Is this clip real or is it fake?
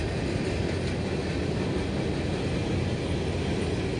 real